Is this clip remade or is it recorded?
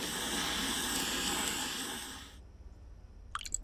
recorded